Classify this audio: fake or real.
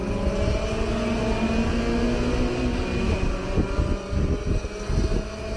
real